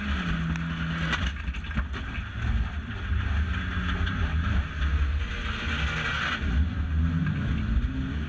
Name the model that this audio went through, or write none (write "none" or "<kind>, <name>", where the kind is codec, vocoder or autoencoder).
none